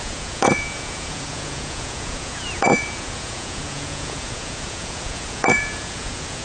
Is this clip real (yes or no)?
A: no